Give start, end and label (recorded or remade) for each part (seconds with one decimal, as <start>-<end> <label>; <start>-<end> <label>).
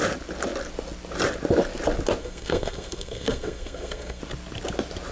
0.0-2.2 recorded; 2.2-4.2 remade; 4.2-5.1 recorded